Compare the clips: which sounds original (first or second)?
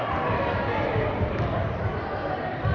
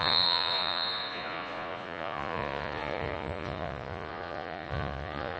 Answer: first